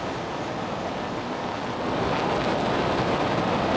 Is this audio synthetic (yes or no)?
no